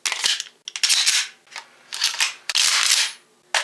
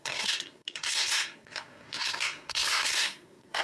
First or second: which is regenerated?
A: second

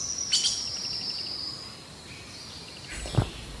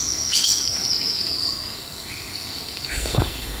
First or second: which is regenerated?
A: second